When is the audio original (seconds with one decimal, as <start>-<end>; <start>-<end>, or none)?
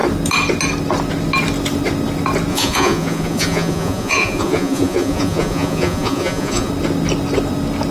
0.0-2.5; 6.7-7.9